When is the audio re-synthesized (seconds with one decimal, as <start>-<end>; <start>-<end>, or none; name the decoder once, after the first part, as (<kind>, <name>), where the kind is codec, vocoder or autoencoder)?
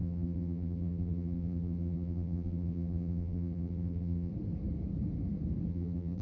0.0-4.3 (vocoder, BigVGAN v2); 5.7-6.2